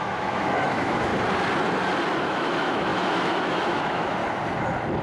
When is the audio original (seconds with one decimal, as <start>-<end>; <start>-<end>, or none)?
1.1-2.2; 4.2-5.0